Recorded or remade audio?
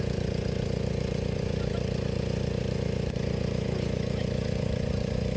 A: remade